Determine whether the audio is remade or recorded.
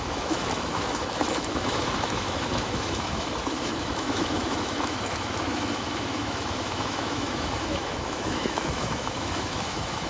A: remade